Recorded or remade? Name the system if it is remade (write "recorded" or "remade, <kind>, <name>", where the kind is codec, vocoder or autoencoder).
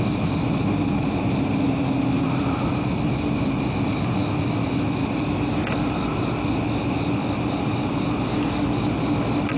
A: recorded